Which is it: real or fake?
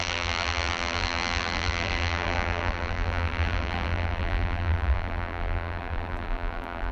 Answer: fake